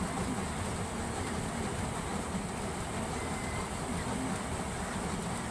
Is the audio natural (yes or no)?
yes